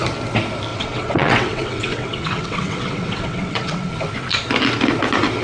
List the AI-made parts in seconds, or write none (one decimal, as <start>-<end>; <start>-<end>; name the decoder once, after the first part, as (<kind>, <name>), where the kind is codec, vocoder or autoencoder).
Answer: 0.7-3.9 (vocoder, WaveNeXt)